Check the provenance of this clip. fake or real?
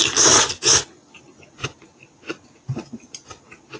real